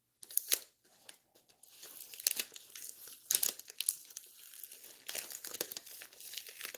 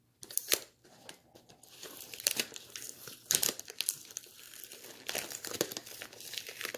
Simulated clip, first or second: second